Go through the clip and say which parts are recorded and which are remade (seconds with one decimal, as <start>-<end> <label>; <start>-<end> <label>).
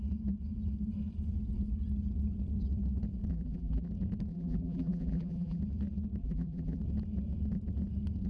0.0-3.3 recorded; 3.3-3.9 remade; 3.9-4.3 recorded; 4.3-5.6 remade; 5.6-6.2 recorded; 6.2-6.8 remade; 6.8-8.3 recorded